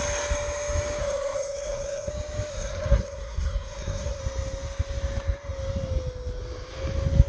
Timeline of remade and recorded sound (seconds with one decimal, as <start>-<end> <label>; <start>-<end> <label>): 0.0-1.0 recorded; 1.0-2.1 remade; 2.1-2.5 recorded; 2.5-4.2 remade; 4.2-7.3 recorded